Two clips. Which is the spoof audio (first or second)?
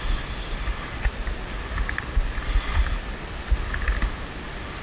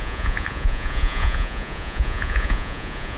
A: second